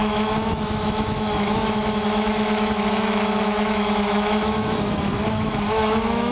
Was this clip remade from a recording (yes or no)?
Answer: yes